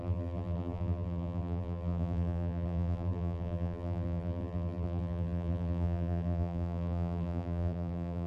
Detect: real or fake fake